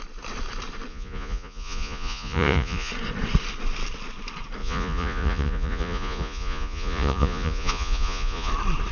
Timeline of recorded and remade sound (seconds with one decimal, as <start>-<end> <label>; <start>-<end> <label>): 0.0-0.9 recorded; 0.9-2.9 remade; 2.9-4.6 recorded; 4.6-8.5 remade; 8.5-8.9 recorded